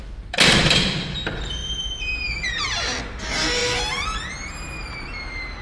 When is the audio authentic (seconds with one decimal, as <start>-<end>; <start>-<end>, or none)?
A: 0.0-1.6; 2.6-5.6